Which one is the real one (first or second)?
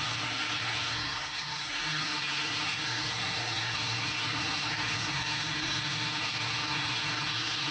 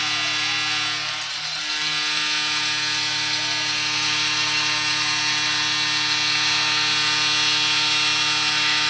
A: second